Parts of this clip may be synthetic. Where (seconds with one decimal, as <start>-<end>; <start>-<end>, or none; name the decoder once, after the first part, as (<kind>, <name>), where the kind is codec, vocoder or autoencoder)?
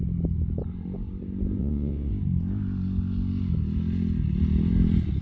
1.6-2.1 (vocoder, WaveNeXt)